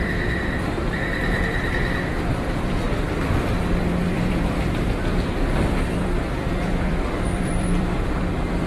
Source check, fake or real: fake